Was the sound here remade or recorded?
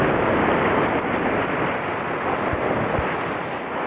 recorded